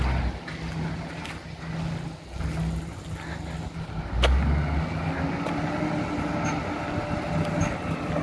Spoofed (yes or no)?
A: no